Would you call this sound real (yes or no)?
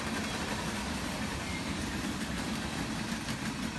yes